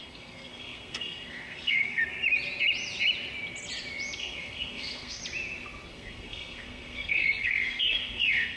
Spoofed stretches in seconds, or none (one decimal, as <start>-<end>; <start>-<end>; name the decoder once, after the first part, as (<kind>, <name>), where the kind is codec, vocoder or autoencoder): 0.0-2.0 (codec, SNAC); 4.2-5.2; 5.9-8.6